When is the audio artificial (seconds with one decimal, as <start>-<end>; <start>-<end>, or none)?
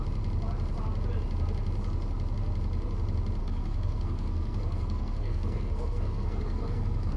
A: 3.4-7.2